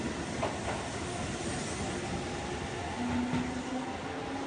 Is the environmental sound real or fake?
real